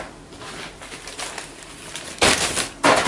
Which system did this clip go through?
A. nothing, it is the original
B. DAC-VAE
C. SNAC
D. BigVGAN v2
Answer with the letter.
A